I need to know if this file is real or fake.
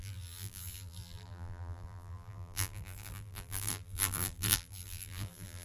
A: fake